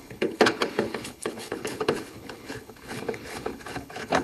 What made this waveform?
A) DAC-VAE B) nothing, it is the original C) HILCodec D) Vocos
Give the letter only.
C